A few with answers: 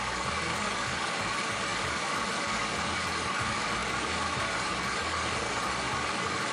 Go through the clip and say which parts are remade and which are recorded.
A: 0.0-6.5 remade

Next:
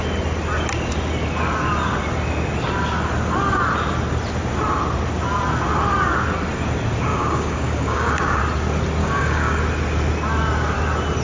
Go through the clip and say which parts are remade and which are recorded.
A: 0.0-7.1 recorded; 7.1-8.4 remade; 8.4-9.0 recorded; 9.0-9.6 remade; 9.6-11.2 recorded

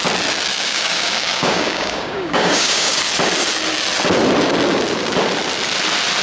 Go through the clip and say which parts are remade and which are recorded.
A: 0.0-0.5 recorded; 0.5-3.0 remade; 3.0-6.2 recorded

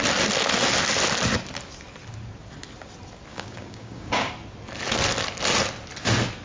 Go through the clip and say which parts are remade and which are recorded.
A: 0.0-3.3 recorded; 3.3-4.3 remade; 4.3-6.4 recorded

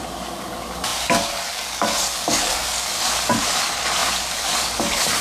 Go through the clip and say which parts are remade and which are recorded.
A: 0.0-5.2 remade